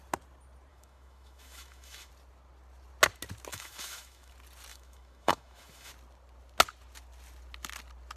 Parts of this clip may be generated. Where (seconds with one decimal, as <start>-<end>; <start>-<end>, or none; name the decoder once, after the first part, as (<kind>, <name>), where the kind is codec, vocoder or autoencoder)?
0.7-2.1 (autoencoder, DAC-VAE); 3.5-4.3; 4.7-5.9